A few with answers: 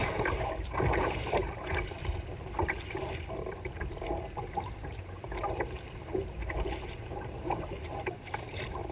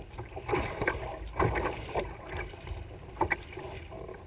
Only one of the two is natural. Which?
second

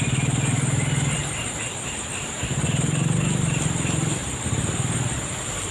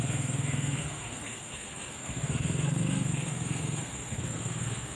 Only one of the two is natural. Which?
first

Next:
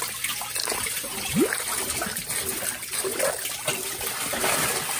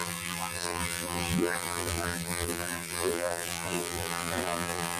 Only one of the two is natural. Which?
first